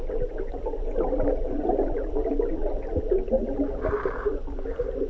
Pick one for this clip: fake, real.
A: fake